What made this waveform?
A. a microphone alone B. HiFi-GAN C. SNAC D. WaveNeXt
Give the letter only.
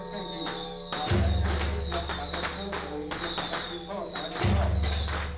A